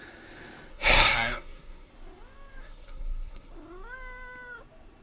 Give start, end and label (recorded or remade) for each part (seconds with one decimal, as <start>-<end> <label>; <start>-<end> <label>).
0.0-0.7 recorded; 0.7-1.9 remade; 1.9-2.6 recorded; 2.6-3.5 remade; 3.5-5.0 recorded